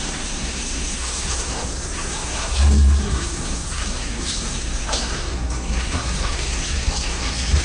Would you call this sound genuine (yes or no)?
no